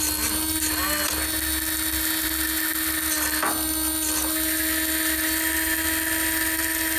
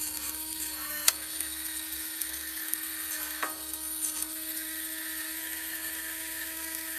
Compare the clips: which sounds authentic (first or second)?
first